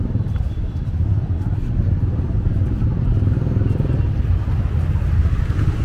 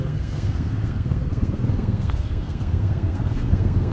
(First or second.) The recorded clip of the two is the first